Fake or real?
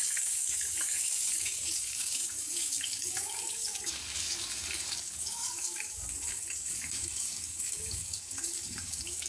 fake